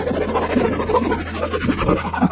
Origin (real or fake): real